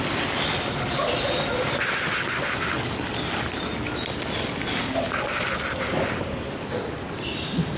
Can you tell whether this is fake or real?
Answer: real